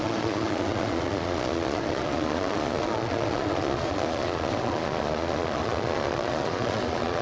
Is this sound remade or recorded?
remade